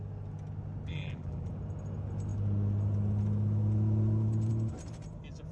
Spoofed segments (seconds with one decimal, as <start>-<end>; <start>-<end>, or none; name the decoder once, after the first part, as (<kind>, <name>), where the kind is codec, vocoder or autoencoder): 0.9-1.5 (vocoder, BigVGAN v2)